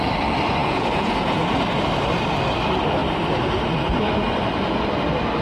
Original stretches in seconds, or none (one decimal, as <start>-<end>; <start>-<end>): 0.0-0.6; 1.4-5.4